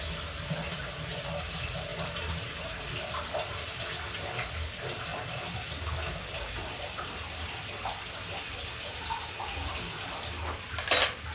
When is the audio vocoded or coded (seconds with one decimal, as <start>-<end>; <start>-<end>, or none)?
none